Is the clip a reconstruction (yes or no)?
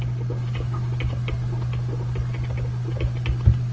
no